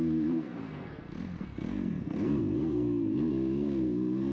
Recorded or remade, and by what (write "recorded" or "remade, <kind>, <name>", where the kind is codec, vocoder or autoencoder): remade, codec, SNAC